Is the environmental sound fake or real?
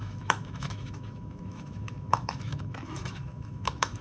fake